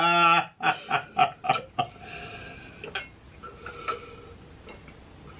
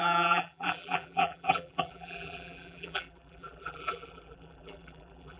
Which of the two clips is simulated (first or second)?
second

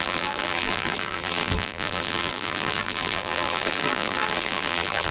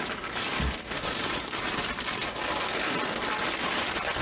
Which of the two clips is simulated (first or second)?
first